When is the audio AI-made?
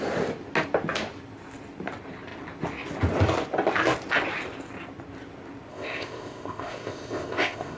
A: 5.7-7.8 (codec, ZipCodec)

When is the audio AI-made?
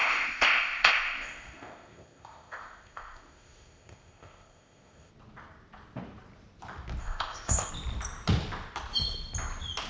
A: 0.0-5.1 (codec, ZipCodec); 7.0-7.7